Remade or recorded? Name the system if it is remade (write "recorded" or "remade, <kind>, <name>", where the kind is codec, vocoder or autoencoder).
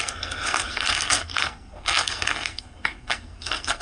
remade, codec, SNAC